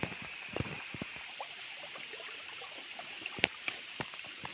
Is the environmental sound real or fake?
fake